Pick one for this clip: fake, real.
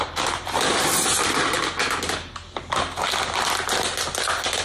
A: real